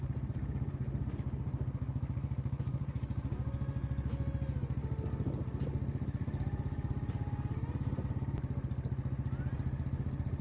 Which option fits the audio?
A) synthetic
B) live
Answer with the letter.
B